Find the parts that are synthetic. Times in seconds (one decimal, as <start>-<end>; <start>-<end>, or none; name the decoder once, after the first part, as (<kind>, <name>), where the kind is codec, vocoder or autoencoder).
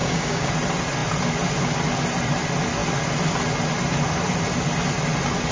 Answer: 0.0-0.5 (codec, DAC)